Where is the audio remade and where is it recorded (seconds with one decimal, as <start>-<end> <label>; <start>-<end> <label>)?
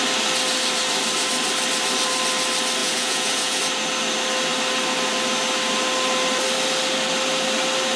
0.0-2.8 recorded; 2.8-3.6 remade; 3.6-8.0 recorded